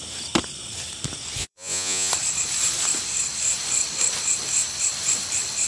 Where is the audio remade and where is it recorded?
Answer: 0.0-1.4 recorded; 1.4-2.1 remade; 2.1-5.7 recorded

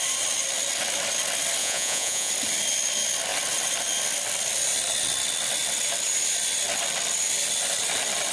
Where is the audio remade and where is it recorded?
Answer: 0.0-1.6 recorded; 1.6-2.3 remade; 2.3-8.3 recorded

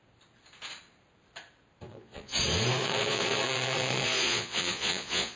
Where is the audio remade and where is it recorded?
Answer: 0.0-1.9 recorded; 1.9-2.4 remade; 2.4-2.8 recorded; 2.8-5.4 remade

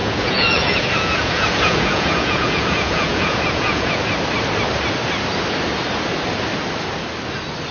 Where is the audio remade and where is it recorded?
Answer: 0.0-4.0 remade; 4.0-7.7 recorded

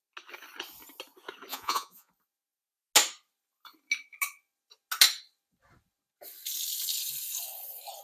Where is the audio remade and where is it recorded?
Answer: 0.0-1.5 recorded; 1.5-2.1 remade; 2.1-8.0 recorded